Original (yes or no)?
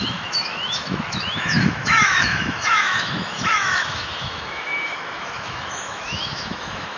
no